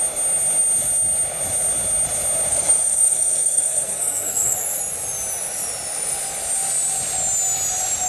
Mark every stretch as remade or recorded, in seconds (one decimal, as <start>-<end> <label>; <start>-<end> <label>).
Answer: 0.0-2.5 recorded; 2.5-4.8 remade; 4.8-8.1 recorded